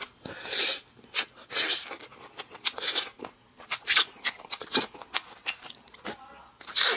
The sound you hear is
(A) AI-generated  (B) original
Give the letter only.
B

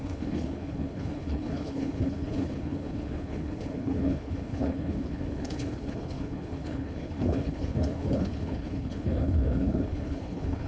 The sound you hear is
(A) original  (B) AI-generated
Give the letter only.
B